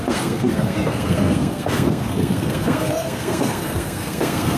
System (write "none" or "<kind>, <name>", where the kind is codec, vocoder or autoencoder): codec, SNAC